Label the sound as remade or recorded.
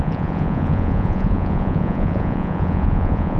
remade